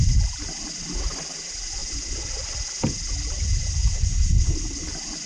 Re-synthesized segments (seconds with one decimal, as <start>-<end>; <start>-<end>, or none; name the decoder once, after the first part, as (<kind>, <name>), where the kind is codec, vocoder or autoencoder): none